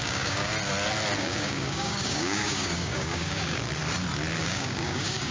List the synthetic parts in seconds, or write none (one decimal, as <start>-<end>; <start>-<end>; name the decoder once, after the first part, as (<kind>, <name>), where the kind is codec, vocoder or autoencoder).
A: 0.0-0.5 (codec, DAC); 1.2-3.6; 4.4-5.3